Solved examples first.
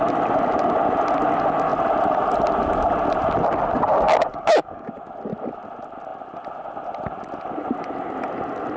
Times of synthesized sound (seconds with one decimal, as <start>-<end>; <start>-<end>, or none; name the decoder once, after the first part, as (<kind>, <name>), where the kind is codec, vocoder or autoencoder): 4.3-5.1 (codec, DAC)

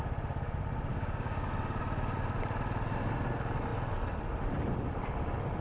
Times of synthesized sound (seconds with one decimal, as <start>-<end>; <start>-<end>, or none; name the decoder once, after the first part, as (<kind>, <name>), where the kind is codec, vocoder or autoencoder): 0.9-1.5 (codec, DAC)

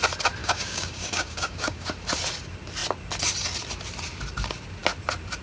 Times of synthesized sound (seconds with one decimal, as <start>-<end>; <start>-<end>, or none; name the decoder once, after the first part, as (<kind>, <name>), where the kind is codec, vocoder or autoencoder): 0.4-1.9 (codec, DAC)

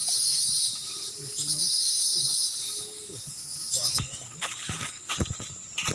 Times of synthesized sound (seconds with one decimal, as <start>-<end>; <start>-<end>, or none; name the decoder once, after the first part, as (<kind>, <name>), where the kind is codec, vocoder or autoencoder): 0.0-0.5 (codec, DAC); 1.6-5.1

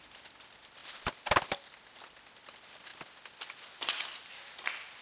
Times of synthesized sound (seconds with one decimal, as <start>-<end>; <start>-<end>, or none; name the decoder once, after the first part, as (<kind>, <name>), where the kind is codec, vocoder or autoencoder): none

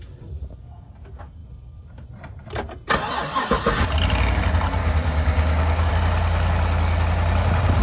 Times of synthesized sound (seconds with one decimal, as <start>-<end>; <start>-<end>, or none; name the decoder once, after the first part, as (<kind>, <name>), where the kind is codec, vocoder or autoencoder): 4.8-5.9 (codec, DAC)

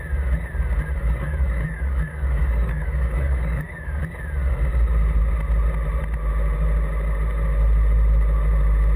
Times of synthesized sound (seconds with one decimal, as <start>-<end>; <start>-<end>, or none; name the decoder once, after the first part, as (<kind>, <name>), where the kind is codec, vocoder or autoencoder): 1.0-4.0 (codec, DAC)

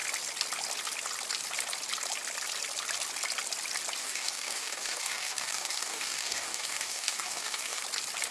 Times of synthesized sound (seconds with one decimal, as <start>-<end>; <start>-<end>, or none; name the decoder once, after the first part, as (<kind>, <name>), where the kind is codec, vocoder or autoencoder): 4.0-7.8 (codec, DAC)